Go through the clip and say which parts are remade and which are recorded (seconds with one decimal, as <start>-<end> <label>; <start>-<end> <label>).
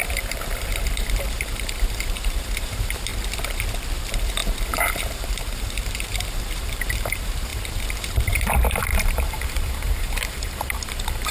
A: 0.0-3.1 remade; 3.1-4.0 recorded; 4.0-11.3 remade